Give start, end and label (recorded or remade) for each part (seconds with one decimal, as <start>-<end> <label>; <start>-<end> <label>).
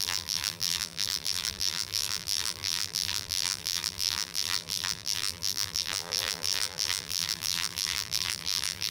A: 0.0-8.9 remade